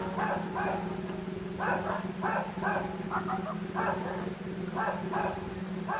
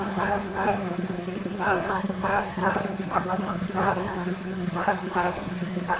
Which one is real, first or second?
first